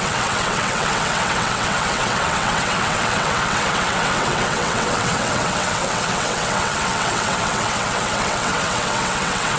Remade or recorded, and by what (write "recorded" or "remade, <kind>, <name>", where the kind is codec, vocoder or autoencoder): remade, vocoder, WaveNeXt